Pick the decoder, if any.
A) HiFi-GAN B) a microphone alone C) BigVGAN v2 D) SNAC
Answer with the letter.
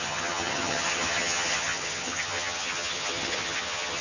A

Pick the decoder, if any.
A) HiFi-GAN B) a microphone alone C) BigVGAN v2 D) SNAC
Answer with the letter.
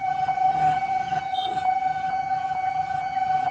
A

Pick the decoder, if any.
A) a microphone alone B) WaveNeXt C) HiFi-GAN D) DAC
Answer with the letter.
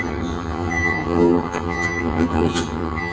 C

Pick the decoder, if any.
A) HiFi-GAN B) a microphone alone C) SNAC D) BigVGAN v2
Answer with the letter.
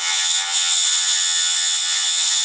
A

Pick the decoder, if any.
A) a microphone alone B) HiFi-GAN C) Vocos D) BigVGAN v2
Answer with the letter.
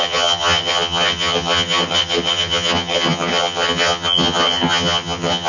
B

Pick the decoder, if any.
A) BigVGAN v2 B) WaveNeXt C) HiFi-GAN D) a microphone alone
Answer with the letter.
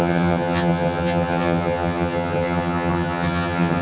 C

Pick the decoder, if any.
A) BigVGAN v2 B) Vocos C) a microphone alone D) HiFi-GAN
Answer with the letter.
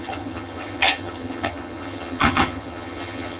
D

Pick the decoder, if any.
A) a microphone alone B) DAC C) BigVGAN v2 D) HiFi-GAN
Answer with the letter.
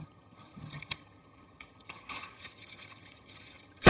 D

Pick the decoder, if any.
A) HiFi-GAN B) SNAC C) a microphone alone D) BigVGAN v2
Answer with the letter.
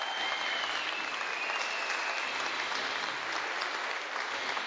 C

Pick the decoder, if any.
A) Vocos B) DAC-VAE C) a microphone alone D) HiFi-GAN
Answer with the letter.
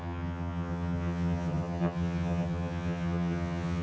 D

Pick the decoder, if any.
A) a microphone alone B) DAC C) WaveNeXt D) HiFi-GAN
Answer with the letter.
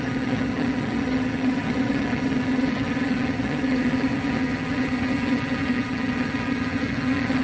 D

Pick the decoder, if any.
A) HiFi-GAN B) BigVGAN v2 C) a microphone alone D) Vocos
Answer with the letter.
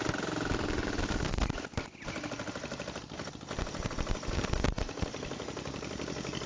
C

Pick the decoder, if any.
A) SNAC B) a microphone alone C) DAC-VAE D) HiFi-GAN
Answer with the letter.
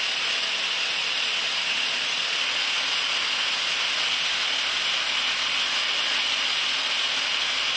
B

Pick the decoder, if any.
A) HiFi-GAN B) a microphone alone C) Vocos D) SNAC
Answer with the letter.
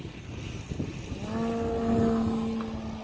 B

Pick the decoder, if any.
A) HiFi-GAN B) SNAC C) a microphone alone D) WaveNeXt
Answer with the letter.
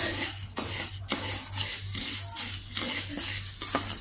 C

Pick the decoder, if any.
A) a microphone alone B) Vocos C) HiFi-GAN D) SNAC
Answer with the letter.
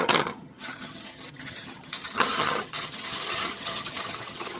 C